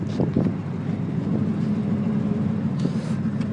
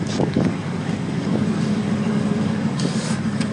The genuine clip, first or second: first